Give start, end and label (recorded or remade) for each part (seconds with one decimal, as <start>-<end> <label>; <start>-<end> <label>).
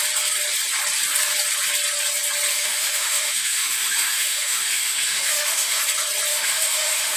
0.0-2.5 recorded; 2.5-5.8 remade; 5.8-6.3 recorded; 6.3-7.2 remade